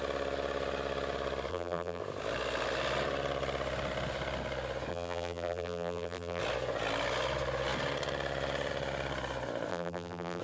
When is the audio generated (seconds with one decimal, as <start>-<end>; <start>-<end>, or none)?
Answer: 1.5-2.0; 4.9-6.4; 9.7-10.4